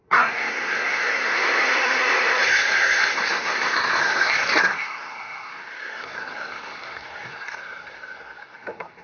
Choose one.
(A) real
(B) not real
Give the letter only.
B